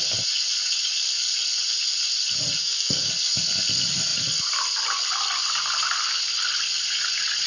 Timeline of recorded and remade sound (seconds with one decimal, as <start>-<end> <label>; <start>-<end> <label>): 0.0-2.6 recorded; 2.6-3.1 remade; 3.1-7.5 recorded